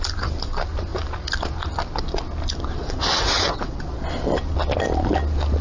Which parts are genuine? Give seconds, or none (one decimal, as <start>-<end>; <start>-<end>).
0.0-2.8; 3.8-5.6